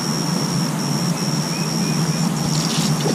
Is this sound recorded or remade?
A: recorded